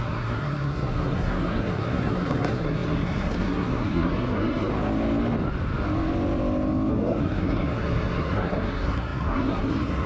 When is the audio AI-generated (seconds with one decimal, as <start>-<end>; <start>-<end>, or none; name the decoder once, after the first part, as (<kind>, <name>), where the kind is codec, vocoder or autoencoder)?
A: 0.0-4.7 (codec, SNAC); 6.9-10.1